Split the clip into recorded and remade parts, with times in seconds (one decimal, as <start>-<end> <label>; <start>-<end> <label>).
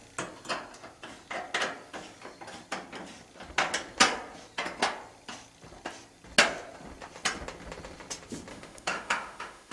0.0-8.5 recorded; 8.5-9.7 remade